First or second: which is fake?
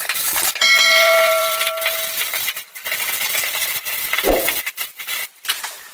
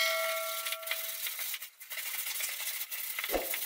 first